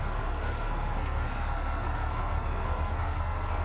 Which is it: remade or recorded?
remade